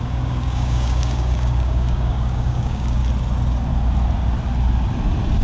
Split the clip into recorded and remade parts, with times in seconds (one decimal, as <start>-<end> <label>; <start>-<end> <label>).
0.0-3.0 remade; 3.0-5.4 recorded